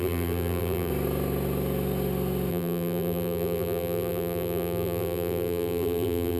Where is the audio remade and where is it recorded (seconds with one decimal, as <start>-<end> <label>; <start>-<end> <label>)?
0.0-0.9 remade; 0.9-2.5 recorded; 2.5-6.4 remade